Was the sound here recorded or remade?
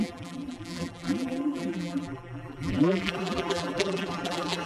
remade